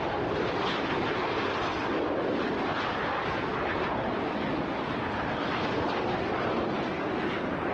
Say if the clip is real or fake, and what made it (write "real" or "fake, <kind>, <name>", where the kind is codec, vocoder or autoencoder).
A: real